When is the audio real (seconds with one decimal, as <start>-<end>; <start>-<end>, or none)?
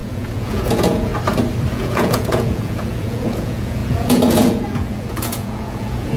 1.1-1.7